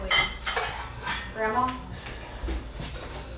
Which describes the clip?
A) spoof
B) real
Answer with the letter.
B